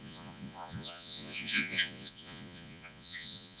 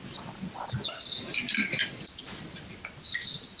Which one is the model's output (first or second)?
first